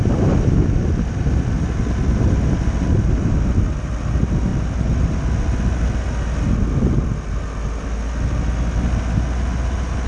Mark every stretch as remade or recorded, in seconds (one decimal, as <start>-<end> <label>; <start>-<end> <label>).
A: 0.0-10.1 recorded